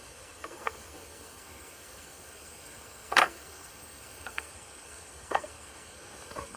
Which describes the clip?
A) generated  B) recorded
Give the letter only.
A